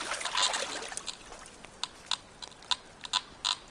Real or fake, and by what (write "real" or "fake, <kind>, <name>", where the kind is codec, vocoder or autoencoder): real